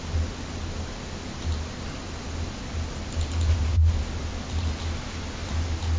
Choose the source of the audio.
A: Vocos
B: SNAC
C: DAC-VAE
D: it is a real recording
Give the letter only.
D